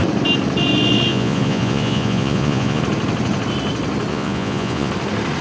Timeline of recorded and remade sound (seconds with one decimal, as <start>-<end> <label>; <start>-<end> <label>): 0.0-1.1 recorded; 1.1-2.8 remade; 2.8-4.1 recorded; 4.1-4.9 remade; 4.9-5.4 recorded